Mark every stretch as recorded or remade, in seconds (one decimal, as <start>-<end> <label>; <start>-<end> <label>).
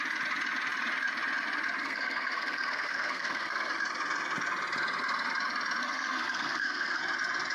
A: 0.0-1.8 recorded; 1.8-3.7 remade; 3.7-5.8 recorded; 5.8-7.0 remade; 7.0-7.5 recorded